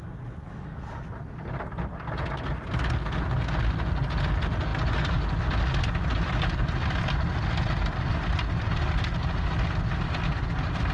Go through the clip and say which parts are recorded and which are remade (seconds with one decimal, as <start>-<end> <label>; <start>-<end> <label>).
0.0-0.4 recorded; 0.4-1.0 remade; 1.0-10.9 recorded